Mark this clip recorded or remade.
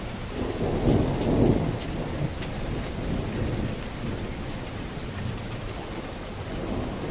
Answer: recorded